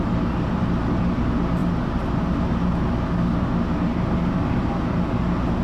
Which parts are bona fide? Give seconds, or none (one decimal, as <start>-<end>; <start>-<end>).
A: 0.0-5.6

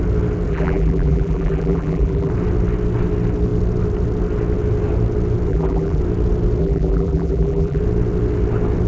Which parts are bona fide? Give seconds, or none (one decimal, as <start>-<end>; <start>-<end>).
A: 0.0-0.5; 2.3-5.5; 6.0-6.6; 7.8-8.9

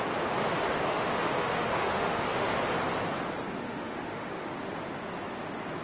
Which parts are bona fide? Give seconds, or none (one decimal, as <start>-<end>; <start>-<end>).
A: 0.0-0.9; 2.5-3.6; 4.5-5.8

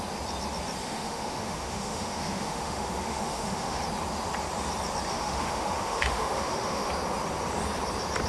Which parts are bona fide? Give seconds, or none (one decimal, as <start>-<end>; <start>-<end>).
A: 0.0-0.8; 3.8-5.1; 6.9-8.3